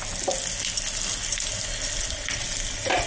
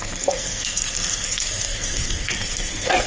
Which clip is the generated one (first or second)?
second